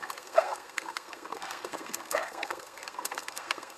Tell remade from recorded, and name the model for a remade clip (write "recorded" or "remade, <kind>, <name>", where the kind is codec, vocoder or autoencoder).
remade, codec, SNAC